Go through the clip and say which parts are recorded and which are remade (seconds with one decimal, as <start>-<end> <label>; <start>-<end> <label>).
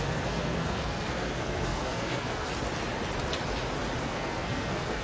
0.0-2.5 remade; 2.5-4.0 recorded; 4.0-5.0 remade